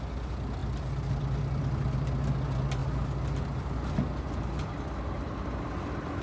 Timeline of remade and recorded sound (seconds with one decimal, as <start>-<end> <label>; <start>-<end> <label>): 0.0-6.2 recorded